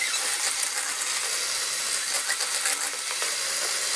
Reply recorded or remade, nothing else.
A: recorded